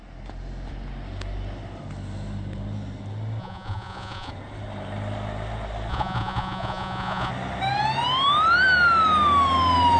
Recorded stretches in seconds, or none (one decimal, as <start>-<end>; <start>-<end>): 0.0-3.4; 4.3-5.9; 7.3-10.0